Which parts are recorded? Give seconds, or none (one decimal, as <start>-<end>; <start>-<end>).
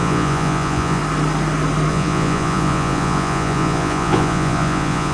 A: 1.0-1.9